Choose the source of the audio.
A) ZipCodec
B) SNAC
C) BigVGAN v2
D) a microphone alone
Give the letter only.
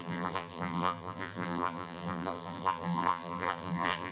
C